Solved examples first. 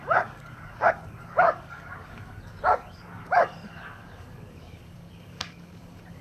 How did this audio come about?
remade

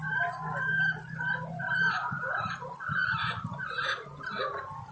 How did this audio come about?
recorded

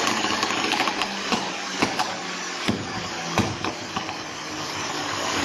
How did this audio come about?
remade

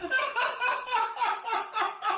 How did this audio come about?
remade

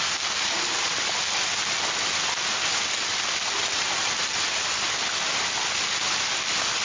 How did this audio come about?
recorded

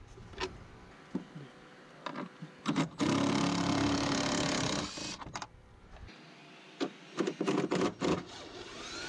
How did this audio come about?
recorded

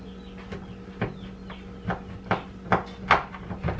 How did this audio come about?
recorded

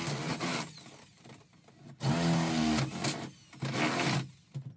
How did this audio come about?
recorded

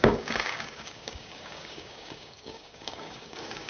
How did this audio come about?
remade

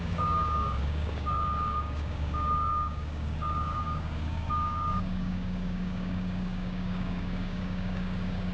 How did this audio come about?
remade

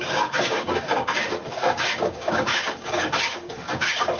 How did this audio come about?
remade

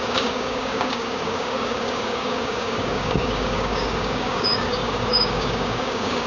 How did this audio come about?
remade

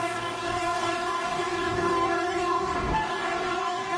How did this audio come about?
remade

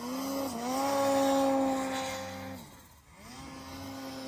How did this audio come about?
recorded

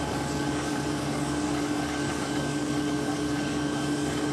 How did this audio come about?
remade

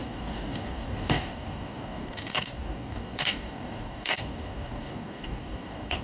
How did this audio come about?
remade